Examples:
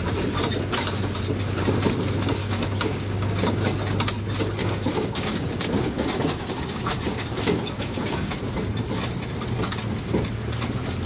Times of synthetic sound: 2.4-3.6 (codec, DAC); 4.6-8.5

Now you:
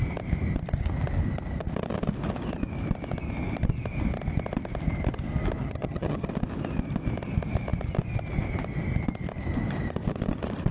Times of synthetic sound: 5.6-6.3 (vocoder, HiFi-GAN)